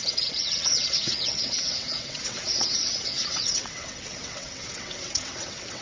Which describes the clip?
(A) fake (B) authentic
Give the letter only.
A